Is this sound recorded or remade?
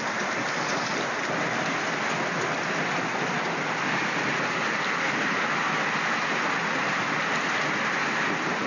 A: recorded